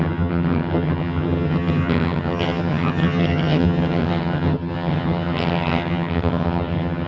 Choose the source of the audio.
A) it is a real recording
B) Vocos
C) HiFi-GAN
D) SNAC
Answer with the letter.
C